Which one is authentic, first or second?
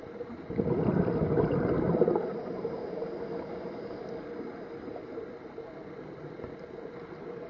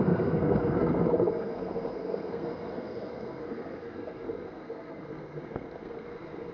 first